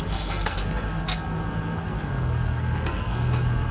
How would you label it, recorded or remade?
remade